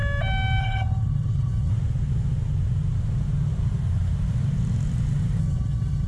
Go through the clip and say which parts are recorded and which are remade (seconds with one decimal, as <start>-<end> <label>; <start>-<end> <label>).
0.0-0.6 recorded; 0.6-1.7 remade; 1.7-5.4 recorded; 5.4-6.1 remade